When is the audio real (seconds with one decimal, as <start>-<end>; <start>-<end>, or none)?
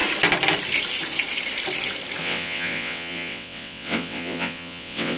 0.0-2.2